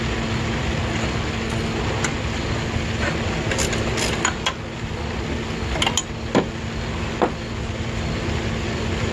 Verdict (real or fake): real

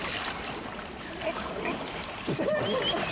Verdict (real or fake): real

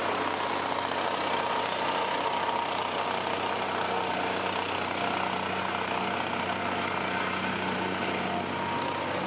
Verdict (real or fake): real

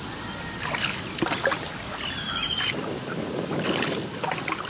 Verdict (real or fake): real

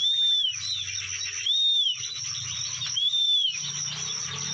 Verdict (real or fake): real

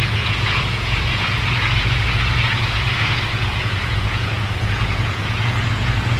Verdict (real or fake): fake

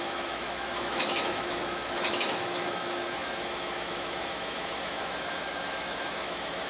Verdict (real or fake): fake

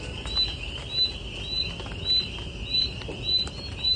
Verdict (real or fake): real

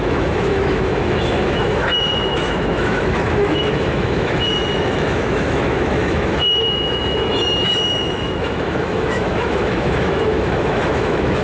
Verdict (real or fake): fake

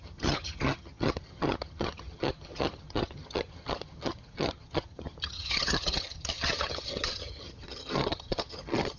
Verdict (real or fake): fake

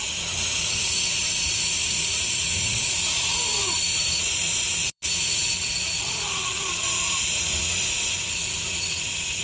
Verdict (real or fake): fake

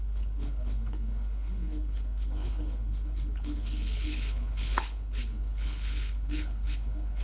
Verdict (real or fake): fake